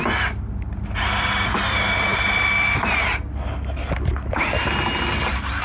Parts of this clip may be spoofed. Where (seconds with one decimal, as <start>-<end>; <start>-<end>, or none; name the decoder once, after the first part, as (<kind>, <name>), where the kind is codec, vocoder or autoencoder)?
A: none